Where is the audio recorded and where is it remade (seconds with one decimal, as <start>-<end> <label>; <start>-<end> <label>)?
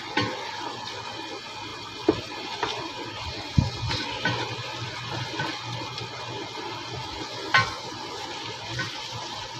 0.0-9.6 recorded